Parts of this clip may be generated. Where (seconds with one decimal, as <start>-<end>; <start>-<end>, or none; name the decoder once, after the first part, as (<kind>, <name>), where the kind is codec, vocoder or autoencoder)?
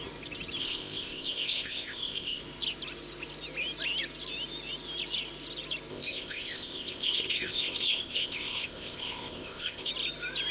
0.6-2.4 (codec, ZipCodec); 5.9-9.9